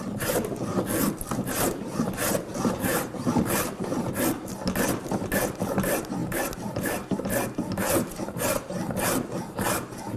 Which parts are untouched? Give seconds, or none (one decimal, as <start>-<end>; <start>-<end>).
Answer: 0.0-2.5; 3.7-6.2; 7.3-10.2